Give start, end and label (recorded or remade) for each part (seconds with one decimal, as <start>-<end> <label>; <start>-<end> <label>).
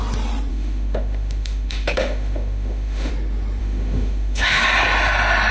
0.0-0.5 recorded; 0.5-3.1 remade; 3.1-3.6 recorded; 3.6-4.6 remade; 4.6-5.5 recorded